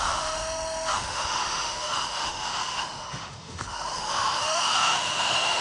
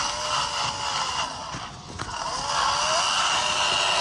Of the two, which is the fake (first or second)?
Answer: first